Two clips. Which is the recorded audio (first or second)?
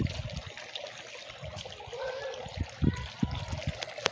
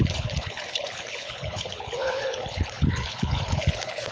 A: first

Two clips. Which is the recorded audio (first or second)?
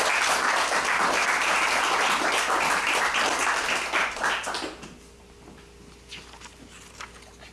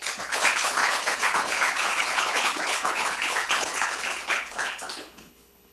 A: first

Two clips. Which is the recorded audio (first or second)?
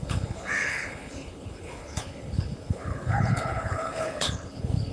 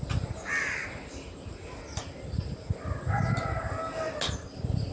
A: second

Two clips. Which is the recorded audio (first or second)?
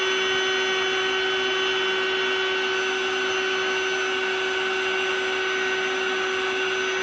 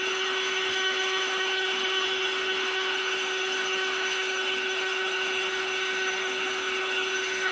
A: first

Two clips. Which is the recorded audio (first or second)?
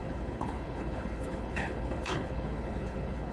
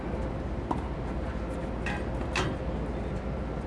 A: second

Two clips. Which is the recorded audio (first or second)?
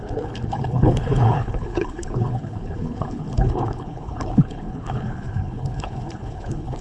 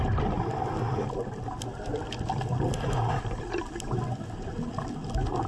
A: second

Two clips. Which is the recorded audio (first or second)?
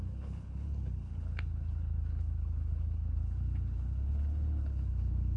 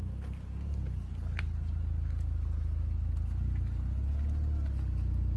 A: second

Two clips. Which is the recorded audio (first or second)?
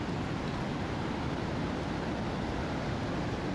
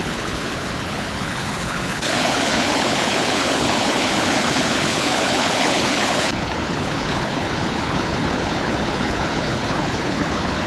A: first